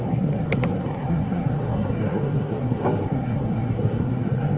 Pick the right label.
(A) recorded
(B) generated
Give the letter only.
B